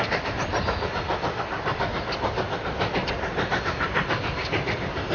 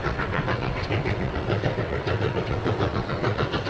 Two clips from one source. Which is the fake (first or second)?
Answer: second